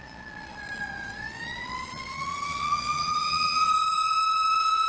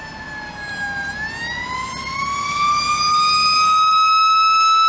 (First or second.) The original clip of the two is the second